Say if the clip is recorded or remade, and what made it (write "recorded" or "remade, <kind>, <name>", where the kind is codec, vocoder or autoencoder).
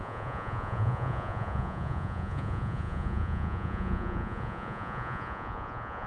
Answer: remade, vocoder, Vocos